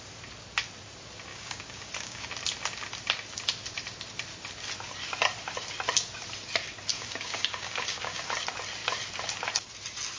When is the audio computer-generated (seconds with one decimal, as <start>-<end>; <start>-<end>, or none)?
1.3-2.3; 6.9-8.3